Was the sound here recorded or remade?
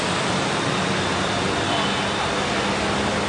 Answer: recorded